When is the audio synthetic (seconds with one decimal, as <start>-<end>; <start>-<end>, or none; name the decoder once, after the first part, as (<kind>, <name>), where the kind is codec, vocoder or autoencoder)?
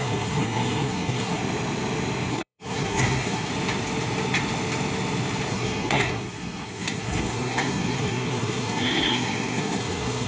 0.0-1.4 (codec, SNAC); 2.3-3.5; 5.5-10.3